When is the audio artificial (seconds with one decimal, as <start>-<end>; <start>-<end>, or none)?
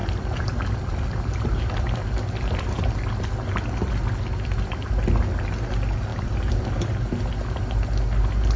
0.0-2.7; 6.1-6.7